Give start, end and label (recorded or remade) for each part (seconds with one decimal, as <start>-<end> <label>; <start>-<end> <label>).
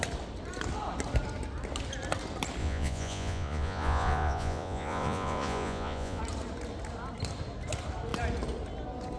0.0-2.6 recorded; 2.6-6.2 remade; 6.2-9.2 recorded